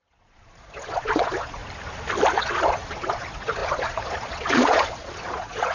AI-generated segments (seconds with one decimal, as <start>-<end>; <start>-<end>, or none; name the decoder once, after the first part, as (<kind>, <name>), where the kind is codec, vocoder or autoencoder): 0.0-1.6 (vocoder, Vocos); 2.3-5.7